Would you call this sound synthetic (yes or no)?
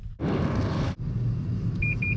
no